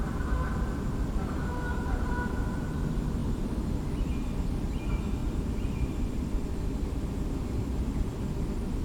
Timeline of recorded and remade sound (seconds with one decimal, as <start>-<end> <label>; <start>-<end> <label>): 0.0-5.2 recorded; 5.2-7.1 remade; 7.1-8.8 recorded

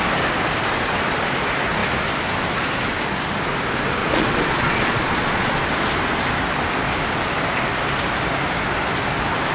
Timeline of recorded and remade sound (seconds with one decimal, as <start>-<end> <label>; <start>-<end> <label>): 0.0-4.0 recorded; 4.0-5.6 remade; 5.6-9.5 recorded

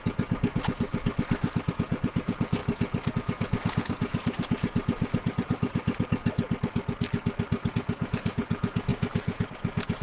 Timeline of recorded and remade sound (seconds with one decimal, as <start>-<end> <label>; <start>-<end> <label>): 0.0-0.9 remade; 0.9-1.7 recorded; 1.7-6.2 remade; 6.2-7.7 recorded; 7.7-10.0 remade

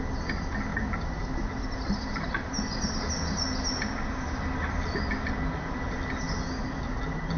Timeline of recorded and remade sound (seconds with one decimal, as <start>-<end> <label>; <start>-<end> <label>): 0.0-7.4 recorded

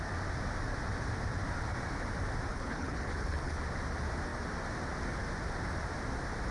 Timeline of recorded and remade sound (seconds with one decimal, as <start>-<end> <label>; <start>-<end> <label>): 0.0-2.5 recorded; 2.5-3.6 remade; 3.6-6.5 recorded

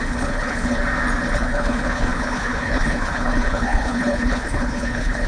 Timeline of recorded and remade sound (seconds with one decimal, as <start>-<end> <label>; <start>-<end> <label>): 0.0-0.8 remade; 0.8-1.3 recorded; 1.3-5.3 remade